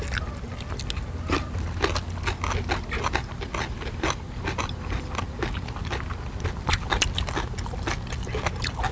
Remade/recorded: recorded